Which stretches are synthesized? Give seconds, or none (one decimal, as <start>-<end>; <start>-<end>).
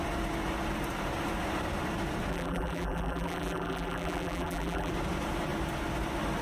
2.3-4.9